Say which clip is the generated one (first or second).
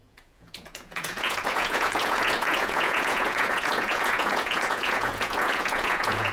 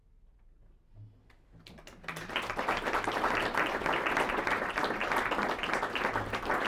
first